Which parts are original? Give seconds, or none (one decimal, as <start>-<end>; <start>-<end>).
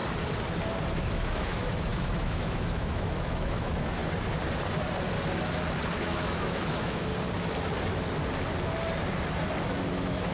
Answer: 0.0-0.9; 4.0-6.0; 7.1-9.7